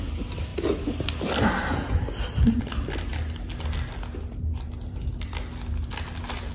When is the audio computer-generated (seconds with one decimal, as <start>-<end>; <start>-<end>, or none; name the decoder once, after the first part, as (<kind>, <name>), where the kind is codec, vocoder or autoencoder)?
none